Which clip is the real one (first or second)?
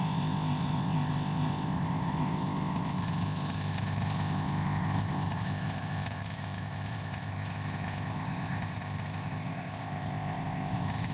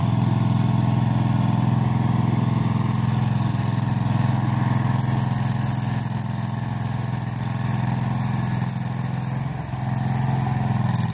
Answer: second